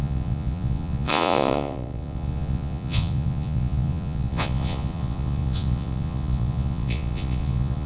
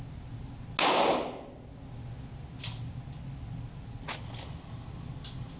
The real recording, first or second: second